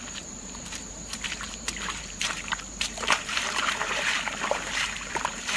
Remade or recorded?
remade